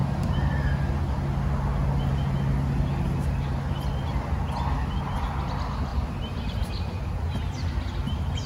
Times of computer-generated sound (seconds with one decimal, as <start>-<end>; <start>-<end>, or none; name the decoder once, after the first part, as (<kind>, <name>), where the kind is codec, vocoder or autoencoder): 5.9-6.7 (vocoder, BigVGAN v2)